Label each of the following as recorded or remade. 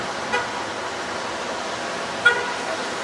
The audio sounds recorded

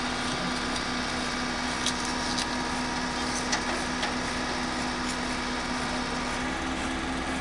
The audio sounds recorded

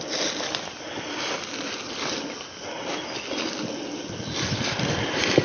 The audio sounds recorded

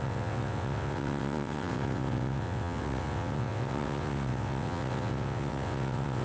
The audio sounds remade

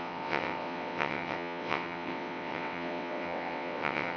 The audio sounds remade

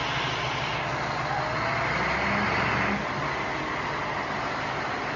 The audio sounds recorded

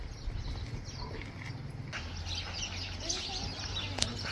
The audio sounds recorded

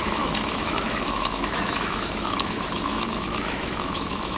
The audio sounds remade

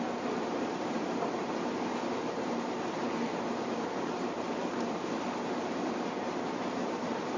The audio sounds remade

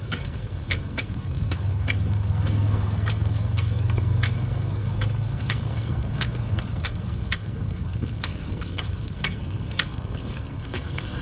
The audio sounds remade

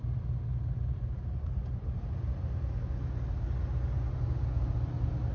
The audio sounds recorded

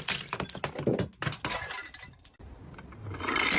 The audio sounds recorded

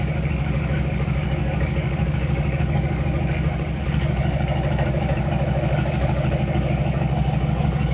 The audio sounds remade